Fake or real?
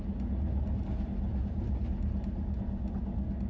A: real